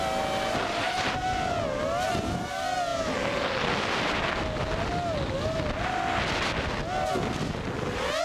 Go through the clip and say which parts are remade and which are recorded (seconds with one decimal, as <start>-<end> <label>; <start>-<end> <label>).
0.0-8.2 recorded